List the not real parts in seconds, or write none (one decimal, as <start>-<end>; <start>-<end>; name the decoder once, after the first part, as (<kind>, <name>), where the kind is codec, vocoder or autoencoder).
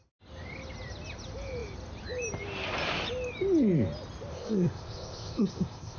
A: 4.3-6.0 (codec, ZipCodec)